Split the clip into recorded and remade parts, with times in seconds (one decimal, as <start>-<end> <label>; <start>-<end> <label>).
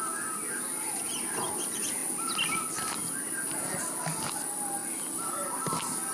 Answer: 0.0-2.0 recorded; 2.0-2.6 remade; 2.6-3.0 recorded; 3.0-4.2 remade; 4.2-4.8 recorded; 4.8-6.1 remade